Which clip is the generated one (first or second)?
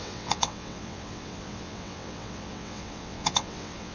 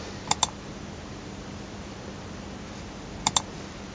first